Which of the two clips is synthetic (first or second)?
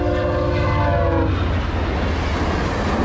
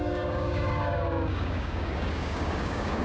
second